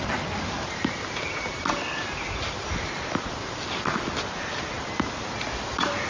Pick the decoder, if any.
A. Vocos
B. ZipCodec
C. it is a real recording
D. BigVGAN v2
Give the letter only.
C